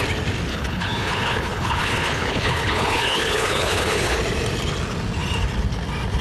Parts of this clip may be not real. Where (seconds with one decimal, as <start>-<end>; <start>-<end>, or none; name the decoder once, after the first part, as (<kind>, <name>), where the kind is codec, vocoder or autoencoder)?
0.5-4.2 (codec, HILCodec)